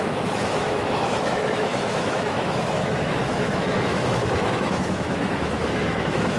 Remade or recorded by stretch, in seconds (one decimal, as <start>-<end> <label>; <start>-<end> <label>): 0.0-6.4 remade